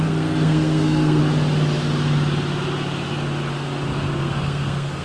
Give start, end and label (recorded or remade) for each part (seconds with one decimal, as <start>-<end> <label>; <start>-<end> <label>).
0.0-1.2 remade; 1.2-4.2 recorded; 4.2-5.0 remade